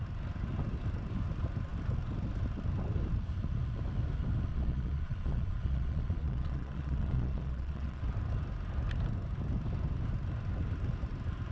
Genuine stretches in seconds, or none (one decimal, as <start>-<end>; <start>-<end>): 0.0-4.5; 8.0-11.5